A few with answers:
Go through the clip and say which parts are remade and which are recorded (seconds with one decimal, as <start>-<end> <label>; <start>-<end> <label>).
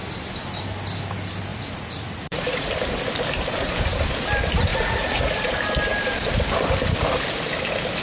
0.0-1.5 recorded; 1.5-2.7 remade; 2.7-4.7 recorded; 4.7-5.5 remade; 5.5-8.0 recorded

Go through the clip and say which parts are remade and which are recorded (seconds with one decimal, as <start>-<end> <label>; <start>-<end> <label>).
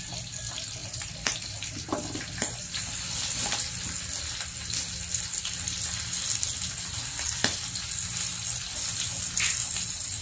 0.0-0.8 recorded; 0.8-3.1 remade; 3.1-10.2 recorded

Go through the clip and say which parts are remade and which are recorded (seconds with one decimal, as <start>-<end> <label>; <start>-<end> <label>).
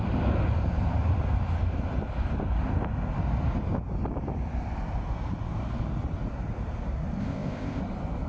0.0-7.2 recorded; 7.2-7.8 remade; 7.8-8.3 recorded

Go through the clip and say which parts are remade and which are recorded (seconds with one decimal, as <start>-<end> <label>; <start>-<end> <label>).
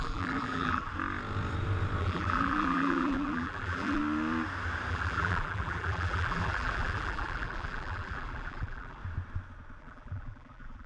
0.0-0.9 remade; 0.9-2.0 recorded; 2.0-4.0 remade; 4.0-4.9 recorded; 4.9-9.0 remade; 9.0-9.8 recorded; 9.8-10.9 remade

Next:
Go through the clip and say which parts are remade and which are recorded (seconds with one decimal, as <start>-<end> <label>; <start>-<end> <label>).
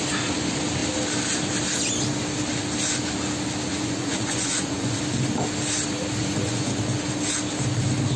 0.0-3.7 recorded; 3.7-5.0 remade; 5.0-6.2 recorded; 6.2-6.8 remade; 6.8-8.2 recorded